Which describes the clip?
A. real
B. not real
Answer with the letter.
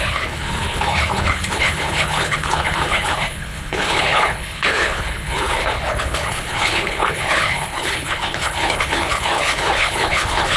B